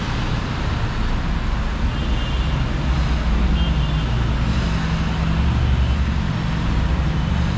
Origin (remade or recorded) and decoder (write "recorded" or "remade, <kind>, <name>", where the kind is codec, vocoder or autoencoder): recorded